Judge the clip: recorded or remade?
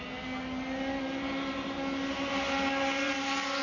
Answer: recorded